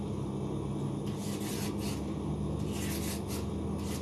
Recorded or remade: recorded